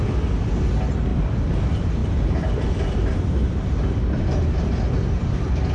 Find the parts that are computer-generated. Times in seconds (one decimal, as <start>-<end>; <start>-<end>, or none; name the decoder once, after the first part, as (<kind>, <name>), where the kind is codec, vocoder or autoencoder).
2.0-3.7 (vocoder, BigVGAN v2)